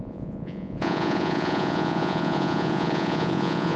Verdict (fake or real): fake